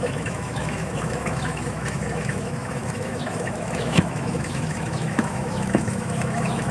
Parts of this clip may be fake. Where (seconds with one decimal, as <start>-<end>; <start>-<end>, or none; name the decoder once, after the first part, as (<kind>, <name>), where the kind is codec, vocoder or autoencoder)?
0.0-6.7 (autoencoder, DAC-VAE)